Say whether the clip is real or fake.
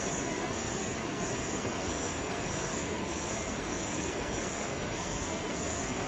fake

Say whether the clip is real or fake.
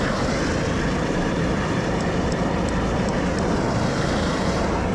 fake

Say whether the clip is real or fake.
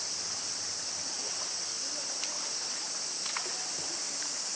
real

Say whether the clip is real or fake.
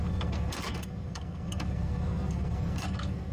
fake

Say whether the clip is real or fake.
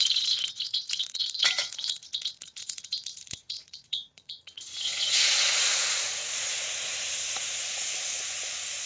fake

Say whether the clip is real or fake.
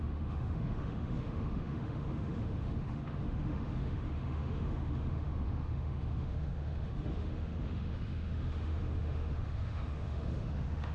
fake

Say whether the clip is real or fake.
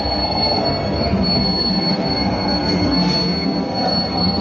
fake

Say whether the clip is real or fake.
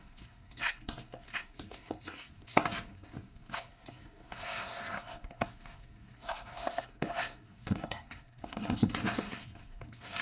fake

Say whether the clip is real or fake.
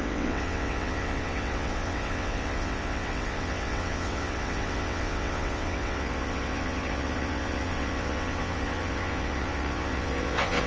fake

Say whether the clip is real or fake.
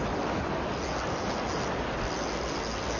real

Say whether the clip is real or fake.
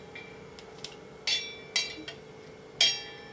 real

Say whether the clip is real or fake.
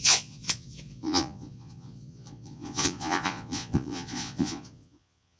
fake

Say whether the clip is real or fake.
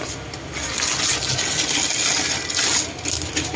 real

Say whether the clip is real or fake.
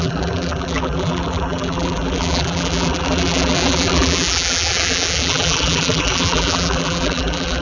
fake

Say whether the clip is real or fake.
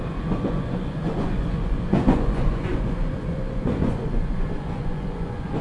fake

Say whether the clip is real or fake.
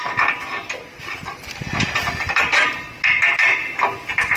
real